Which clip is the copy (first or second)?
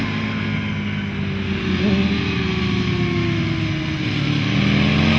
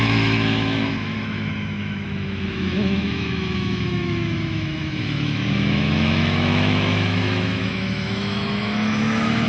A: second